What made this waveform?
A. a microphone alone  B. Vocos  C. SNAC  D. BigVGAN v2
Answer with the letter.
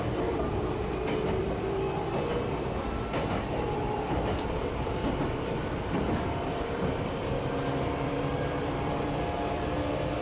D